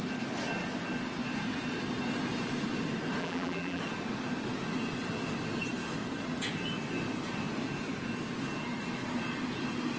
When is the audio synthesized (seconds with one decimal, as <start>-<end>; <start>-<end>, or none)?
3.2-3.8